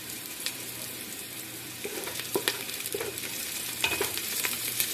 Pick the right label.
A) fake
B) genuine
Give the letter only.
A